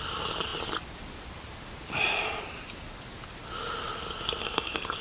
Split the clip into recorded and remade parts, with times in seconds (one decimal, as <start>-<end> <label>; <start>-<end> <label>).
0.0-4.4 recorded; 4.4-5.0 remade